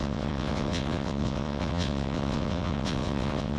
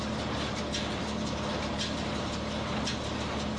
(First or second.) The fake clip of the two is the first